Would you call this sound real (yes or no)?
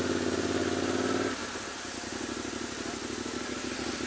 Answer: yes